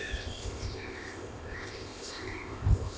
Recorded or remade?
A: remade